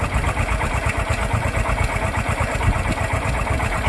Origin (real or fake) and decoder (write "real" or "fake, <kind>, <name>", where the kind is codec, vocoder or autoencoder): real